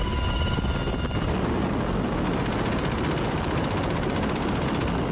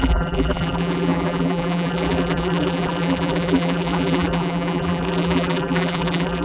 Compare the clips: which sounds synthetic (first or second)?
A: second